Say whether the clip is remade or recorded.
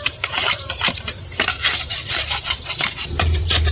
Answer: remade